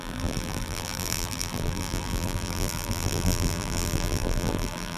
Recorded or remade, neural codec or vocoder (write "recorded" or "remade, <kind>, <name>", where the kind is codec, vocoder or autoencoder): remade, vocoder, BigVGAN v2